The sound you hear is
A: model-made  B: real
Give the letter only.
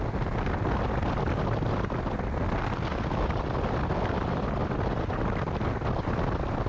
B